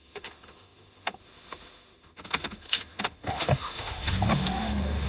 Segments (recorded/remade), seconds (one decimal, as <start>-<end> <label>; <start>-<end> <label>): 0.0-5.1 remade